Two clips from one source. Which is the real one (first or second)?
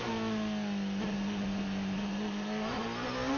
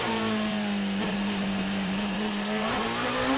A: first